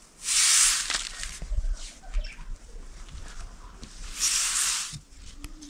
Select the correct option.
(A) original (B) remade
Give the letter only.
A